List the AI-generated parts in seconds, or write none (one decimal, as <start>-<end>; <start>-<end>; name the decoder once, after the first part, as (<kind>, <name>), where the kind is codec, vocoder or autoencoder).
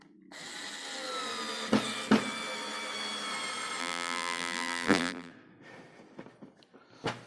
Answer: 3.8-5.3 (vocoder, BigVGAN v2)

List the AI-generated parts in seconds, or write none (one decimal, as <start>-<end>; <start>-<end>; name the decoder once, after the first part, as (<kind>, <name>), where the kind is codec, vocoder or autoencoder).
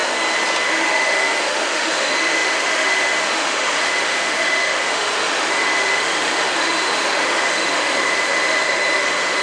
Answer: 0.6-9.4 (autoencoder, DAC-VAE)